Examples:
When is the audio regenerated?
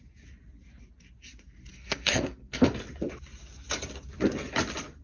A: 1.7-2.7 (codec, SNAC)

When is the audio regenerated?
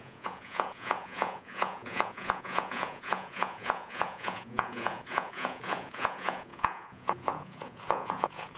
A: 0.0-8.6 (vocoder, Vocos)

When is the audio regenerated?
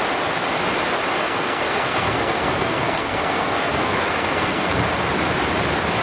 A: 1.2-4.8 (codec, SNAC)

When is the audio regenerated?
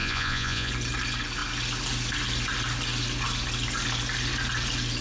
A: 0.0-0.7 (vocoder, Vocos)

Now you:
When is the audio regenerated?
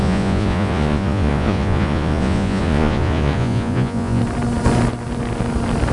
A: 0.0-4.2 (vocoder, Vocos)